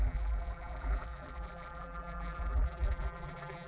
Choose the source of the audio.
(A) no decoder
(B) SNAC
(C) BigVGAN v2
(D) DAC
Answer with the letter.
C